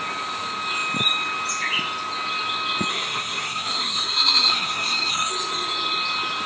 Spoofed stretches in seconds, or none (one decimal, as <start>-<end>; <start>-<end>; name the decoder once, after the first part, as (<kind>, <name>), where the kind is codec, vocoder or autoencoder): 2.9-5.3 (codec, SNAC)